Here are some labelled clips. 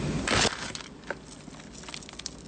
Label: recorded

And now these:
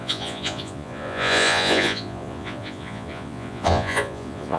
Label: remade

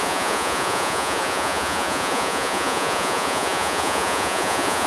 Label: remade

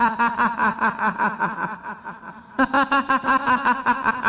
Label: recorded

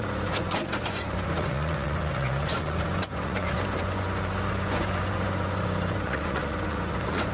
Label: remade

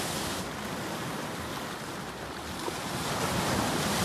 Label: recorded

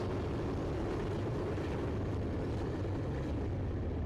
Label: recorded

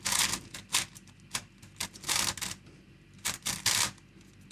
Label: recorded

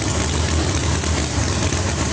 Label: recorded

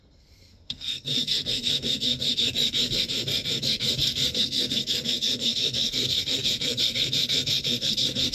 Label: remade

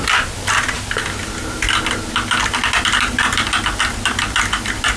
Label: recorded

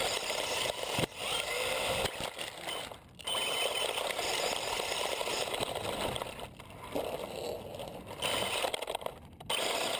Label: recorded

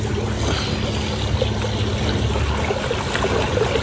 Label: recorded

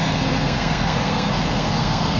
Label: remade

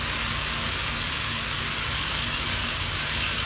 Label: remade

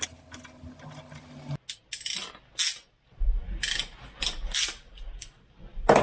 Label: recorded